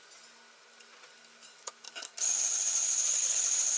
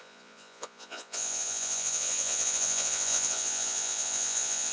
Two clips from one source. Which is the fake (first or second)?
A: second